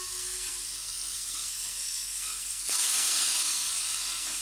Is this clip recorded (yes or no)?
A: no